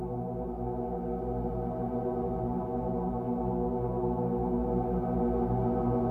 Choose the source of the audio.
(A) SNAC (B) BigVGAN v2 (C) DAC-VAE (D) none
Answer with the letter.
D